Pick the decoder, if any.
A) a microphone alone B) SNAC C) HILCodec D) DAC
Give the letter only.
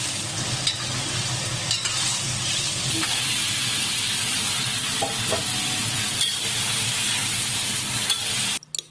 A